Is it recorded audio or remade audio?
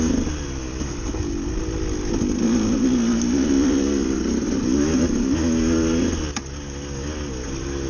recorded